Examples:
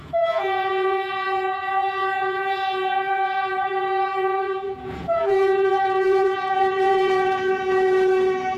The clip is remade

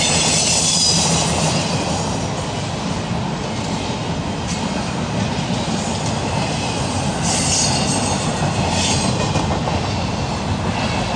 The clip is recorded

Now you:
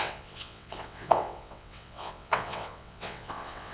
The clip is remade